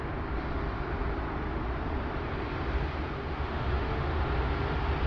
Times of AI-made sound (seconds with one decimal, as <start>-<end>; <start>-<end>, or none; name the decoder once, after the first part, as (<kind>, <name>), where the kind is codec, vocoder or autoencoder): 3.3-4.2 (autoencoder, DAC-VAE)